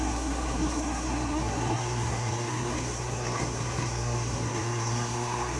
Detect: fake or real fake